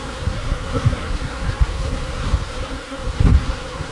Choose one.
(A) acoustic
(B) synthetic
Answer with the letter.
B